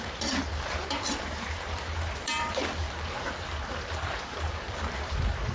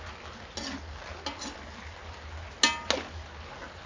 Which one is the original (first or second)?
second